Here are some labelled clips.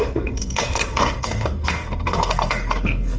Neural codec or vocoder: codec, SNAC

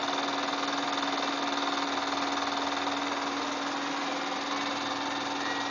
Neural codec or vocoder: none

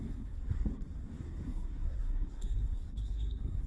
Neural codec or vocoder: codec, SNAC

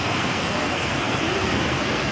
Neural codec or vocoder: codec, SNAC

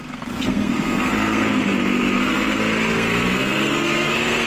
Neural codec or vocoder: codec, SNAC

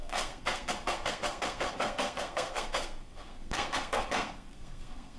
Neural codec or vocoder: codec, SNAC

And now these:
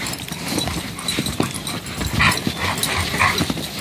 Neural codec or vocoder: none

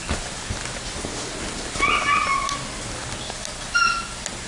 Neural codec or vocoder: none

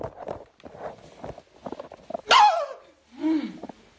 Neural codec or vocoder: none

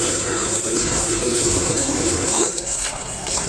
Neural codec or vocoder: codec, SNAC